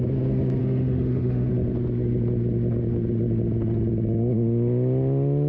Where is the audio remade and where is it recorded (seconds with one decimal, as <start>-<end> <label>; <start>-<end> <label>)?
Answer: 0.0-0.6 recorded; 0.6-1.5 remade; 1.5-5.5 recorded